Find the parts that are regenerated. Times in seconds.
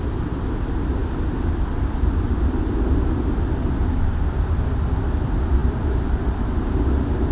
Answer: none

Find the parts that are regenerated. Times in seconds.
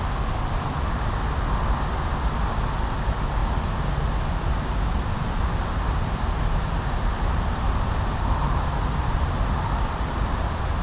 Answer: none